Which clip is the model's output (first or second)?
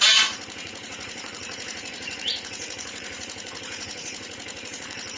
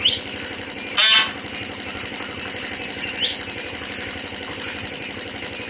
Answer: first